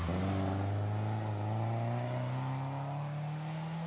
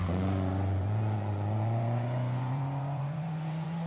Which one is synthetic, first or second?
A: second